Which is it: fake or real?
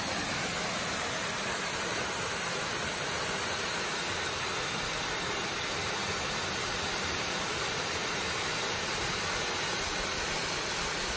real